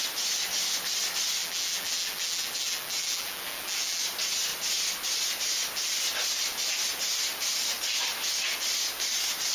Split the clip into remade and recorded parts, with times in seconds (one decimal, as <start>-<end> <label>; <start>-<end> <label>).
0.0-1.4 recorded; 1.4-4.0 remade; 4.0-9.5 recorded